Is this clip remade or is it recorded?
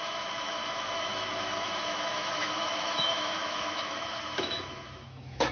remade